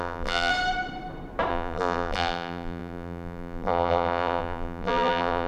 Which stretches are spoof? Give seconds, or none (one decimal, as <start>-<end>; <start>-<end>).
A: 0.0-0.5; 1.5-5.5